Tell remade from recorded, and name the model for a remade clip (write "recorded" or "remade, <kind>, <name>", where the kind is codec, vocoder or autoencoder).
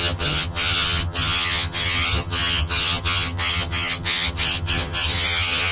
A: remade, vocoder, HiFi-GAN